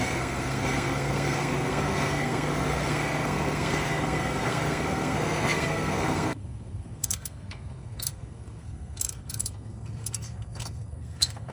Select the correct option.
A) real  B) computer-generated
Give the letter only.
B